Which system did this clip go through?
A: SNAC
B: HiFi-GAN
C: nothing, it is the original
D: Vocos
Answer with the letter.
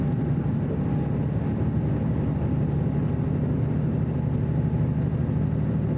C